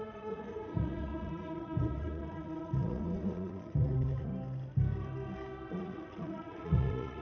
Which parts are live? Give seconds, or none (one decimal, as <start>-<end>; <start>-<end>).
4.3-5.7